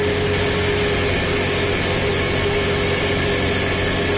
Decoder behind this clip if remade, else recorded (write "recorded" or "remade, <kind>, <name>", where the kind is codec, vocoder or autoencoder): recorded